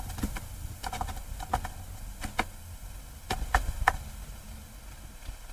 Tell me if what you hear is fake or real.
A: real